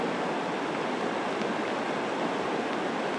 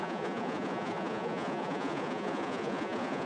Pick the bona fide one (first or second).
first